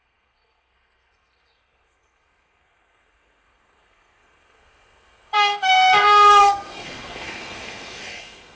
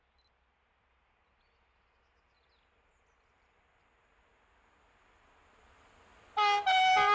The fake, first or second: first